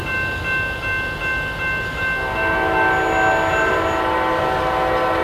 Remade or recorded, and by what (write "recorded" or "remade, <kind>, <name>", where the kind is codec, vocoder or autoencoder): recorded